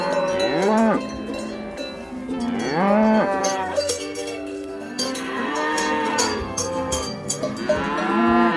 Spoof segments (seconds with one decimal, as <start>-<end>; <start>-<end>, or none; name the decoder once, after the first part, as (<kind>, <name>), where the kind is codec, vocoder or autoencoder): 3.4-7.4 (codec, SNAC)

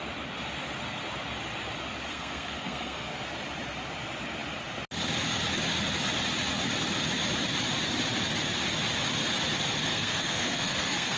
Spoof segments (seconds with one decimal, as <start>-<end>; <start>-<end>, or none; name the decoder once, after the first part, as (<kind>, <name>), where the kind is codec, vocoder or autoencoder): 2.1-3.1 (codec, SNAC); 9.9-11.2

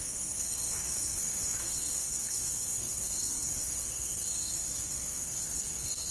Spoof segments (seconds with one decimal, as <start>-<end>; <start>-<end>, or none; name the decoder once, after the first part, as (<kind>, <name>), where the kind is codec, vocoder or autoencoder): 0.0-6.1 (codec, SNAC)

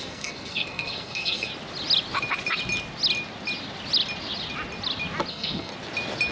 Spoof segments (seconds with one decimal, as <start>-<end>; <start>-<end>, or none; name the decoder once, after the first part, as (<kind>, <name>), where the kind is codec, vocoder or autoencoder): 0.0-1.5 (codec, SNAC); 5.3-5.7